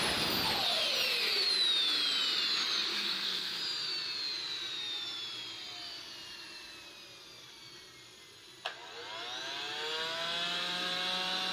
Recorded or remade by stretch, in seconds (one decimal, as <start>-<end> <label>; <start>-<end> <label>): 0.0-2.9 recorded; 2.9-3.6 remade; 3.6-11.5 recorded